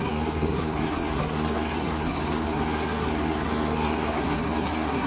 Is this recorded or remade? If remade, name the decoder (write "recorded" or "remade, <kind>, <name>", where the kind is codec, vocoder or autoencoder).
remade, codec, SNAC